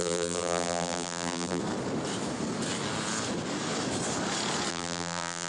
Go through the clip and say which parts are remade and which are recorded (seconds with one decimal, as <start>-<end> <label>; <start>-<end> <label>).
0.0-1.6 remade; 1.6-4.7 recorded; 4.7-5.5 remade